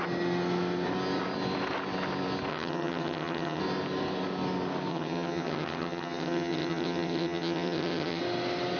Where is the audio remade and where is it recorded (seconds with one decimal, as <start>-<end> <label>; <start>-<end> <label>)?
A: 0.0-2.5 recorded; 2.5-3.6 remade; 3.6-4.9 recorded; 4.9-8.2 remade; 8.2-8.8 recorded